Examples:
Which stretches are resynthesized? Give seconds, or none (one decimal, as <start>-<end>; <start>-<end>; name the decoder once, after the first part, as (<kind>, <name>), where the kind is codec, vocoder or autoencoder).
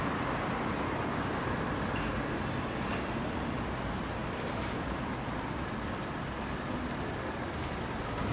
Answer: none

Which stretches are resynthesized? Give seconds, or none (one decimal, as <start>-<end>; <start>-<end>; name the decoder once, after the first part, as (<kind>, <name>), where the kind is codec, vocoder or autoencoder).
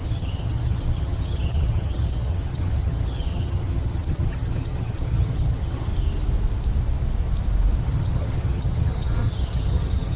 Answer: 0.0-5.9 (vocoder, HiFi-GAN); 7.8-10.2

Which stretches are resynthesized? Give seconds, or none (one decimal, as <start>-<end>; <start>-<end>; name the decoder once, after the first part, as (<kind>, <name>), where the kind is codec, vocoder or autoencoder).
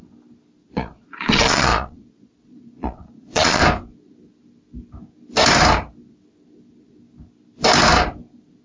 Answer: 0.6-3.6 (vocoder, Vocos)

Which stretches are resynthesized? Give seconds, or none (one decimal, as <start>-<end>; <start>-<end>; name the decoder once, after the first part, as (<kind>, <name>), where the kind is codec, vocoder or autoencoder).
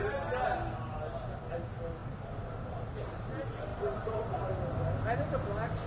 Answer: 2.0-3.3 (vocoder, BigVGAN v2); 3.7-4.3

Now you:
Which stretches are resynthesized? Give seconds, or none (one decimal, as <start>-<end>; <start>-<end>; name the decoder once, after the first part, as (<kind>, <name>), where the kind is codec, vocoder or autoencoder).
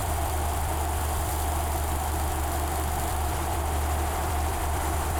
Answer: 0.0-1.3 (vocoder, BigVGAN v2); 3.1-3.6; 4.2-5.2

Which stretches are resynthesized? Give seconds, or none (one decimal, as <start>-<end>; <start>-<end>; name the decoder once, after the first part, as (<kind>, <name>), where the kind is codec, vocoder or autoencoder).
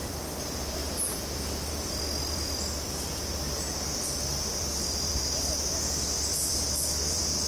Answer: 0.0-0.8 (vocoder, BigVGAN v2); 1.7-7.5